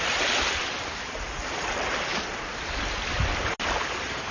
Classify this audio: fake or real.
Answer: real